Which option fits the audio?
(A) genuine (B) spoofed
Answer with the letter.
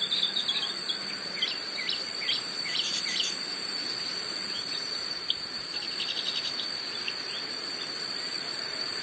B